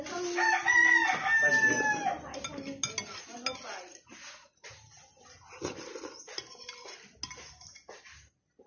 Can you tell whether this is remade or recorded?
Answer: recorded